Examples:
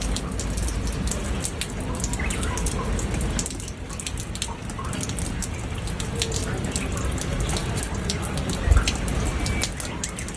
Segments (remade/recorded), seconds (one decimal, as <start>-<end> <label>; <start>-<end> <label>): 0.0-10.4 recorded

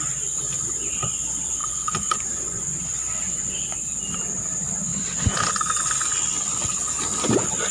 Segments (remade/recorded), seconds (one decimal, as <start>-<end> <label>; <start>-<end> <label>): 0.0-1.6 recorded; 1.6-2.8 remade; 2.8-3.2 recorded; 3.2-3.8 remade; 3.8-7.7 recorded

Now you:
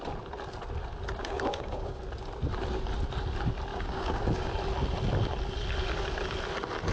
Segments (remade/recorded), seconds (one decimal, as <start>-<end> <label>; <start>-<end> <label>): 0.0-1.2 recorded; 1.2-2.0 remade; 2.0-3.7 recorded; 3.7-4.5 remade; 4.5-6.9 recorded